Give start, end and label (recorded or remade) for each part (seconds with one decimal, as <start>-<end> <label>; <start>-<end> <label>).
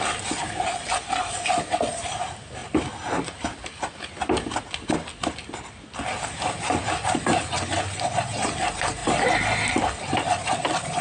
0.0-11.0 recorded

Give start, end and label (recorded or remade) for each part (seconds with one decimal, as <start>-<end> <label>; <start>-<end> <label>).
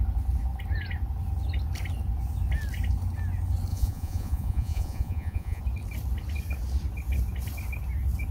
0.0-3.7 recorded; 3.7-5.6 remade; 5.6-8.3 recorded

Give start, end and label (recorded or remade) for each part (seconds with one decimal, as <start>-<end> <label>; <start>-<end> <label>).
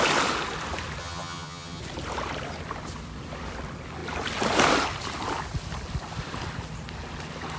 0.0-1.0 recorded; 1.0-1.8 remade; 1.8-7.6 recorded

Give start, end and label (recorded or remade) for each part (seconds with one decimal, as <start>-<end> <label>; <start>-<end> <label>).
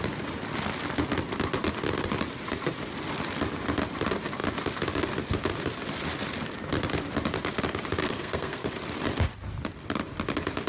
0.0-8.0 recorded; 8.0-8.7 remade; 8.7-10.7 recorded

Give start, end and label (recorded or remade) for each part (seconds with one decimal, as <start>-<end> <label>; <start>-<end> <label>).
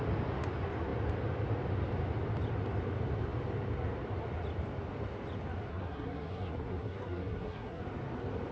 0.0-5.7 recorded; 5.7-7.8 remade; 7.8-8.5 recorded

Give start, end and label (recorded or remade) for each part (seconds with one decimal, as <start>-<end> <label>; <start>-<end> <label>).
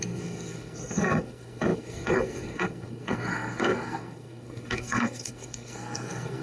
0.0-6.4 remade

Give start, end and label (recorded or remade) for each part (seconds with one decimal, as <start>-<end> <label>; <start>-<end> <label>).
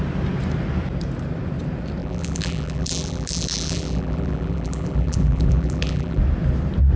0.0-2.0 recorded; 2.0-6.2 remade; 6.2-7.0 recorded